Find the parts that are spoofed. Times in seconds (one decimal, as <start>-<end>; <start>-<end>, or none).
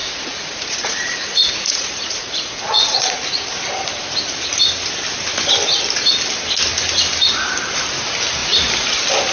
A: 0.0-3.2